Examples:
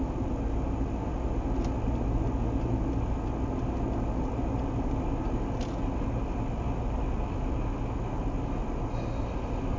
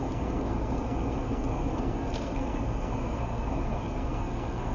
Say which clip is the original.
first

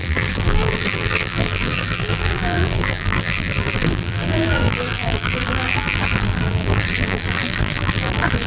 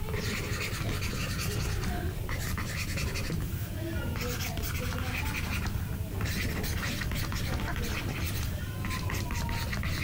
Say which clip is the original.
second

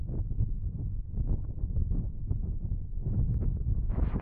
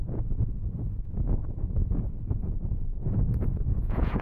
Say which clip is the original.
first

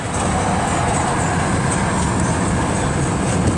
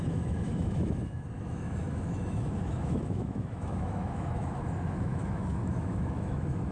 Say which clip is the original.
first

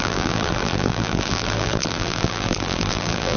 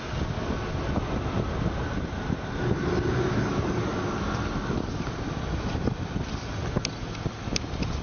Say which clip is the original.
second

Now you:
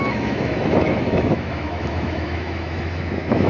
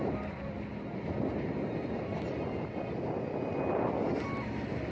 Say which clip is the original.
second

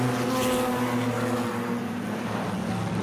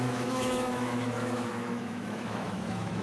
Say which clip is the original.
first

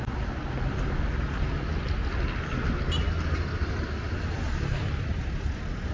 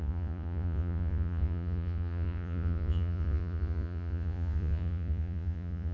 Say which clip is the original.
first